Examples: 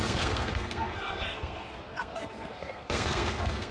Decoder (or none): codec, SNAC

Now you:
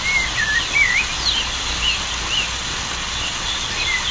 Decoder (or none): none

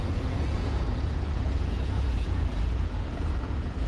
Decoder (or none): vocoder, Vocos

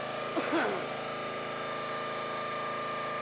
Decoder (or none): none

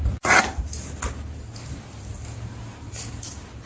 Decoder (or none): none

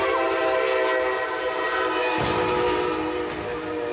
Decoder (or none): none